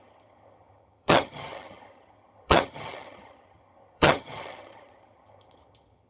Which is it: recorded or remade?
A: remade